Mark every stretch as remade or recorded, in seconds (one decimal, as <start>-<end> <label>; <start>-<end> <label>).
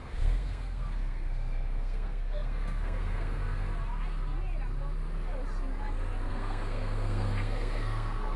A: 0.0-3.4 remade; 3.4-6.3 recorded; 6.3-8.4 remade